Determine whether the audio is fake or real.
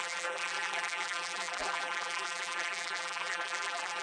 fake